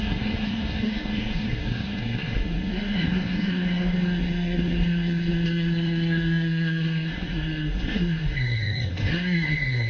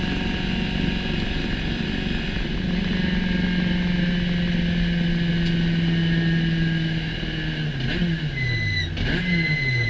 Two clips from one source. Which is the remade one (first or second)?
first